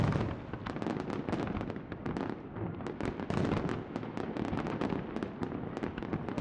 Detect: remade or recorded recorded